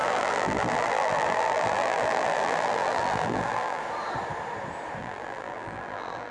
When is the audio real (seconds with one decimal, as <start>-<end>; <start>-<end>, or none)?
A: 3.8-5.0